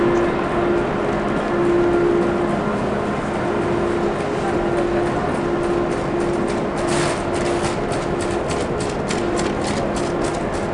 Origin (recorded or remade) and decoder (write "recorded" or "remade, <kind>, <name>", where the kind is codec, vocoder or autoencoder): recorded